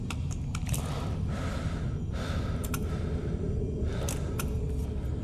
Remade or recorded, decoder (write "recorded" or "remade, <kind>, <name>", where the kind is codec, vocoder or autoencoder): recorded